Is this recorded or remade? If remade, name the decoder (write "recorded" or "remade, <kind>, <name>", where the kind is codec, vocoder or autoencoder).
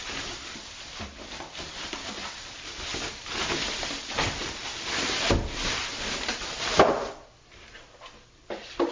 remade, vocoder, BigVGAN v2